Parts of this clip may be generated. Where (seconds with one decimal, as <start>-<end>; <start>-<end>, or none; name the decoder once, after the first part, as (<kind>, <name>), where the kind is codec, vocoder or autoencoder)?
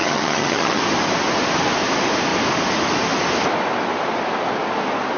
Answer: 0.0-0.8 (vocoder, HiFi-GAN)